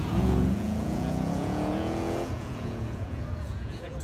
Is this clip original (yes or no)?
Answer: no